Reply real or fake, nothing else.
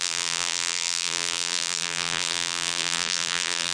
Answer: fake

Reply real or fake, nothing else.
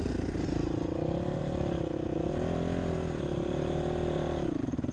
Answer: real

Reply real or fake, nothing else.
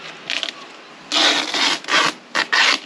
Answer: real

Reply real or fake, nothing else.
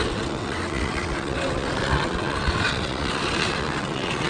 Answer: fake